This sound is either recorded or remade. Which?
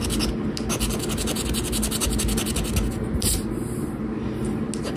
recorded